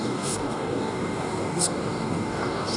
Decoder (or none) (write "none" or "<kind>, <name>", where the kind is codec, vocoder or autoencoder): codec, DAC